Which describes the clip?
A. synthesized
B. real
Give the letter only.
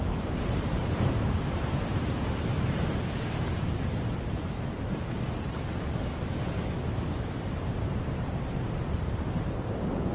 A